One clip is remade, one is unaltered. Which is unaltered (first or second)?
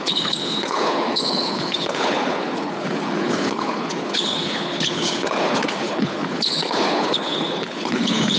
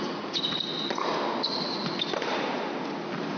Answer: second